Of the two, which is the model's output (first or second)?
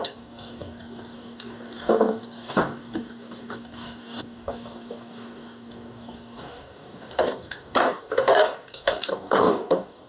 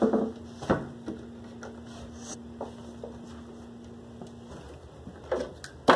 first